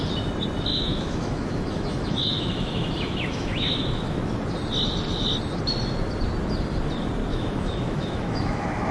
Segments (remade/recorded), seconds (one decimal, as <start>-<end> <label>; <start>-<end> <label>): 0.0-0.7 recorded; 0.7-4.3 remade; 4.3-7.3 recorded; 7.3-8.9 remade